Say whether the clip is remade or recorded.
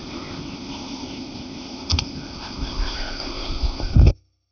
remade